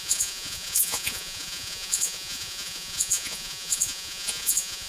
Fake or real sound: fake